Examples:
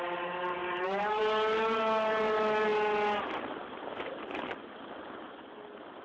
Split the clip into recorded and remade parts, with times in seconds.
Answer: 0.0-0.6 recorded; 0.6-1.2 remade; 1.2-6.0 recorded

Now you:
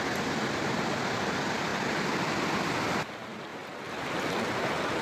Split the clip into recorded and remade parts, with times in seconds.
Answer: 0.0-1.7 remade; 1.7-2.9 recorded; 2.9-3.5 remade; 3.5-4.1 recorded; 4.1-5.0 remade

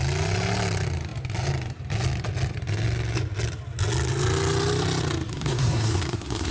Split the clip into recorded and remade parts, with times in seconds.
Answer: 0.0-5.3 recorded; 5.3-6.5 remade

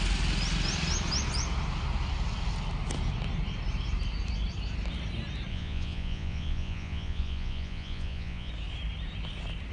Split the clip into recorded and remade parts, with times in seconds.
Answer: 0.0-5.5 recorded; 5.5-8.5 remade; 8.5-9.7 recorded

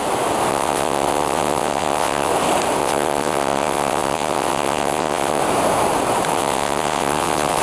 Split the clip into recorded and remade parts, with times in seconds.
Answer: 0.0-0.5 recorded; 0.5-2.3 remade; 2.3-2.8 recorded; 2.8-5.4 remade; 5.4-6.3 recorded; 6.3-7.6 remade